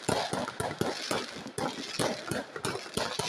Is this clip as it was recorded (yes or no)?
yes